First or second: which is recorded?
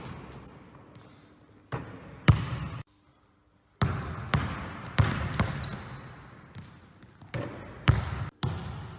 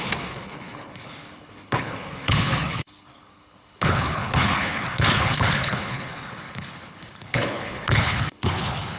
first